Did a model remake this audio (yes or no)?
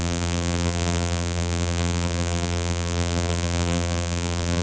yes